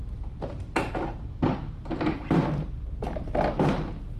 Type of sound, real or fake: fake